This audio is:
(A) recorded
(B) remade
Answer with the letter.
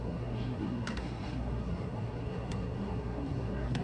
B